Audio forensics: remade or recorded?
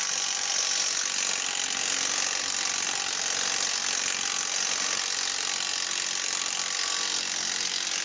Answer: recorded